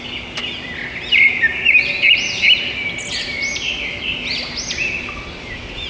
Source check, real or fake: real